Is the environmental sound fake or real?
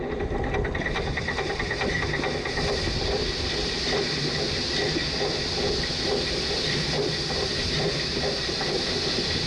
real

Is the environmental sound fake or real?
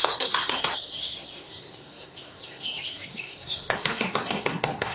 fake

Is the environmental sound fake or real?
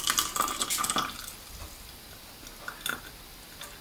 real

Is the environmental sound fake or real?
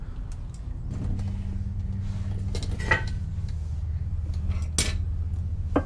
real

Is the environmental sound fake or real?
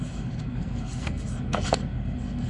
fake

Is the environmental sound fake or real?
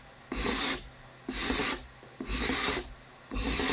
real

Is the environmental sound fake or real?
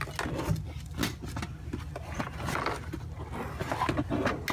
real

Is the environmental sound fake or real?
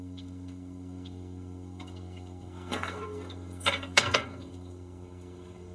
fake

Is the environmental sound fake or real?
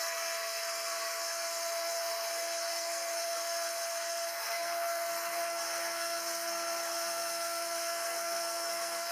fake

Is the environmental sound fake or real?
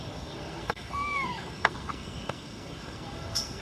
fake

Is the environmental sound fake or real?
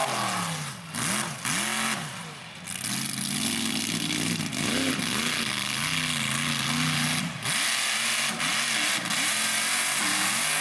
real